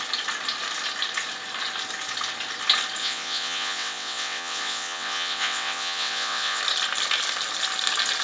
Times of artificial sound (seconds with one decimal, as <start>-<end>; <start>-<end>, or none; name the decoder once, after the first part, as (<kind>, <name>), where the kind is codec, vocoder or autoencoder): 3.0-6.6 (vocoder, WaveNeXt)